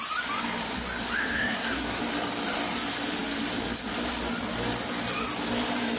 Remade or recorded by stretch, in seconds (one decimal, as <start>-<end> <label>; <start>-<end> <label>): 0.0-1.2 recorded; 1.2-2.0 remade; 2.0-6.0 recorded